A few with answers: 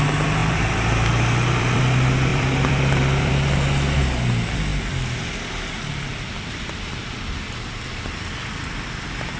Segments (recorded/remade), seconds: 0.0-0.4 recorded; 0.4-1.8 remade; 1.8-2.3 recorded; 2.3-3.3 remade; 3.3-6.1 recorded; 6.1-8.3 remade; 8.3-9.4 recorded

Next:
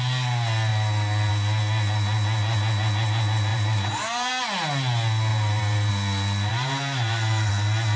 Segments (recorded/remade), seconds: 0.0-3.5 recorded; 3.5-4.3 remade; 4.3-5.3 recorded; 5.3-5.9 remade; 5.9-6.5 recorded; 6.5-7.5 remade; 7.5-8.0 recorded

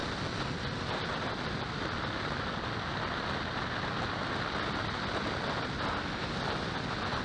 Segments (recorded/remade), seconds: 0.0-7.2 recorded

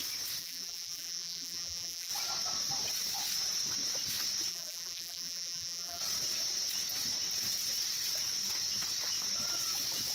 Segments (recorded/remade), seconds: 0.0-0.4 recorded; 0.4-2.1 remade; 2.1-4.5 recorded; 4.5-6.0 remade; 6.0-10.1 recorded

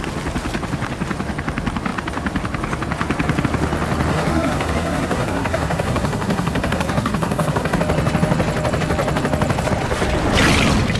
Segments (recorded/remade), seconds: 0.0-4.1 recorded; 4.1-7.8 remade; 7.8-11.0 recorded